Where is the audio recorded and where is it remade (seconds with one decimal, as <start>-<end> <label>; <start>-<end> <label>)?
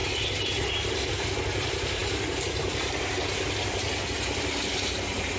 0.0-5.4 recorded